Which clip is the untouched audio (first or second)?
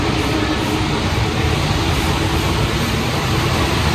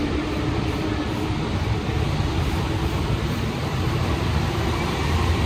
first